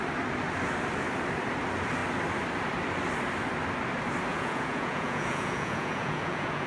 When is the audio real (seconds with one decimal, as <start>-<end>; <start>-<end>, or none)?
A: 0.0-4.3